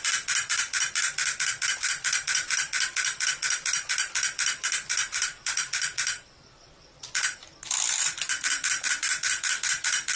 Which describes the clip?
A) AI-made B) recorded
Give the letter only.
A